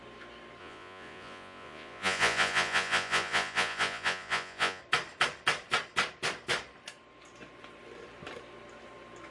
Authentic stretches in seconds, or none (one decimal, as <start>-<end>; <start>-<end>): 0.0-0.6; 4.8-9.3